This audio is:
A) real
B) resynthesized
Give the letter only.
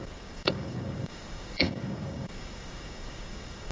B